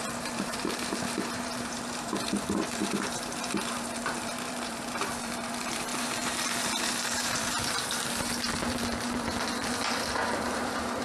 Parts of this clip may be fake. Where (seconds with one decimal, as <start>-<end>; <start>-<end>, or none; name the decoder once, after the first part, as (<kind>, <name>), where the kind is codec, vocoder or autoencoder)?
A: 0.0-11.0 (vocoder, BigVGAN v2)